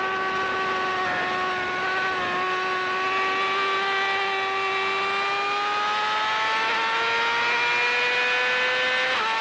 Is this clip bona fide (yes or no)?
yes